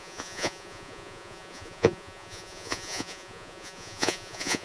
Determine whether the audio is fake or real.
fake